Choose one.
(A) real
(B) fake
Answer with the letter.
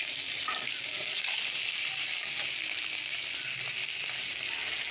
A